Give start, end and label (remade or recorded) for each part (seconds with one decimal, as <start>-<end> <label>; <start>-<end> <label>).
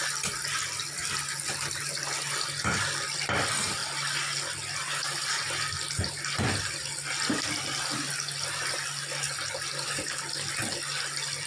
0.0-11.5 recorded